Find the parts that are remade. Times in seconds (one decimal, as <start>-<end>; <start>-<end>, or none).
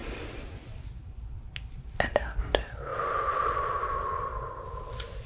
2.9-4.6